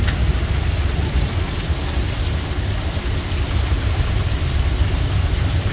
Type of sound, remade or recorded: recorded